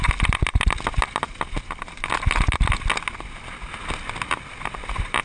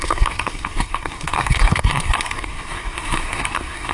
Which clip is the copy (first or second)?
second